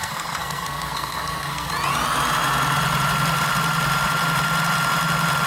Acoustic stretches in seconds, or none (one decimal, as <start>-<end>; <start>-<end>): 1.7-5.5